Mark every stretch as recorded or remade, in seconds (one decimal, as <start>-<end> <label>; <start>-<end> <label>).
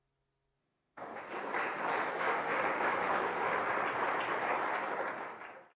0.0-0.6 recorded; 0.6-1.2 remade; 1.2-1.9 recorded; 1.9-3.6 remade; 3.6-5.8 recorded